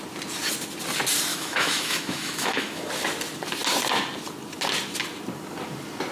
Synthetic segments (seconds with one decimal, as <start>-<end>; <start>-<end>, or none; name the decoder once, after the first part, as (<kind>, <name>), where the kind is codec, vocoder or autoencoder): 1.3-2.9 (autoencoder, DAC-VAE)